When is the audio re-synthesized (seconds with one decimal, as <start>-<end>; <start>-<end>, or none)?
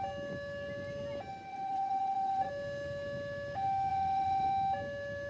1.5-2.5; 3.9-4.5